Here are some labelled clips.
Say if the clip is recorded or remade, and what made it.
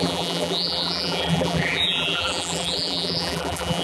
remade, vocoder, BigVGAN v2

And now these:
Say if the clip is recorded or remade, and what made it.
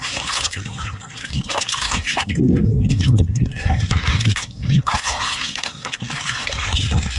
remade, codec, SNAC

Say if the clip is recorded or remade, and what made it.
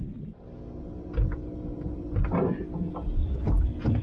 recorded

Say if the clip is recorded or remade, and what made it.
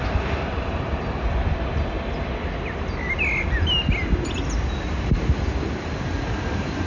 recorded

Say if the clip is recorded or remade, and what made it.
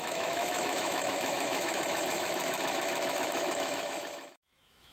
remade, autoencoder, DAC-VAE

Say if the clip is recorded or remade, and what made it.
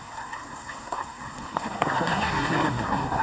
remade, codec, SNAC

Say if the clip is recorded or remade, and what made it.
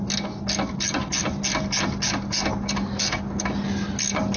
recorded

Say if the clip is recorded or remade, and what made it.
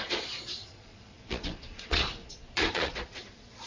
remade, vocoder, Vocos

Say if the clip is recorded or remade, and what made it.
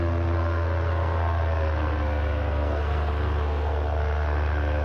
remade, codec, SNAC